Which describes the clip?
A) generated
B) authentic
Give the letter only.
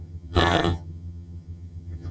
A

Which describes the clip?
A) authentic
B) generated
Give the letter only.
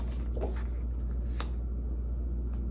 A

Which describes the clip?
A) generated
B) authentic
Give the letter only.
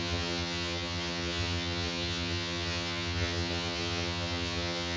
A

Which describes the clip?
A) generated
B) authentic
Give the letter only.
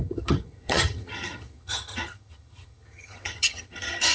A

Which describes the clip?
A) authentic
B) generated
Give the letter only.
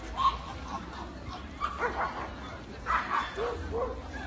A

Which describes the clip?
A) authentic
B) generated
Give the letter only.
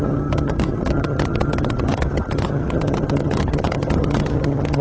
B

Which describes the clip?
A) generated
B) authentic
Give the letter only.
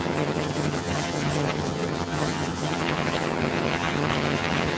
A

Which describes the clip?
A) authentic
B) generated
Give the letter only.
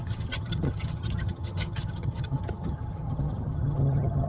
B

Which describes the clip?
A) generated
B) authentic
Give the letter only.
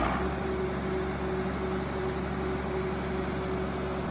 B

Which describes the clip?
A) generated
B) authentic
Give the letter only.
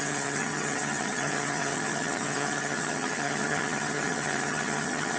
A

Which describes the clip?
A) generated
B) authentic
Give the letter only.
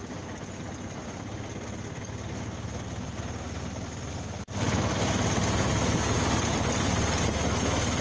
B